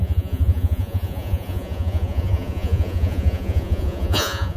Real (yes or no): no